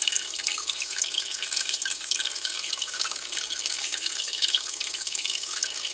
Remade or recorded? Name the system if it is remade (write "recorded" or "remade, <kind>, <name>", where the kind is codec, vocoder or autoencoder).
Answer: remade, codec, SNAC